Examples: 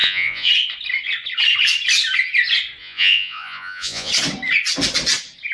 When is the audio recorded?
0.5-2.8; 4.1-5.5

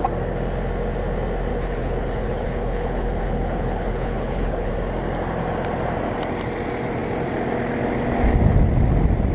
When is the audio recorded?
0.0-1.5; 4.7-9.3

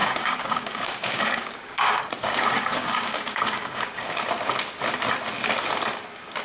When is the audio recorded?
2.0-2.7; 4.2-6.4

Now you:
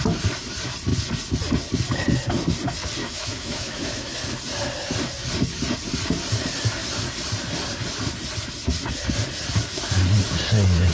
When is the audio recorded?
0.0-3.0; 4.1-10.9

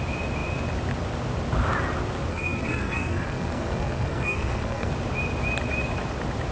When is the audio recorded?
0.0-2.3; 4.9-6.5

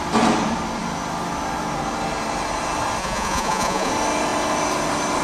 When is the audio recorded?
0.0-3.0; 3.9-5.2